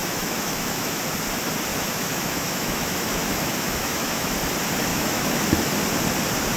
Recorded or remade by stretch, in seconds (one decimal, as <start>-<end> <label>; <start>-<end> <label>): 0.0-1.0 remade; 1.0-1.7 recorded; 1.7-4.3 remade; 4.3-4.9 recorded; 4.9-5.4 remade; 5.4-6.6 recorded